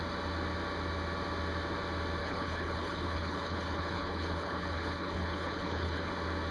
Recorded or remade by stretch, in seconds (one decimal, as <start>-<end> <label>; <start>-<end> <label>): 0.0-2.2 recorded; 2.2-6.1 remade; 6.1-6.5 recorded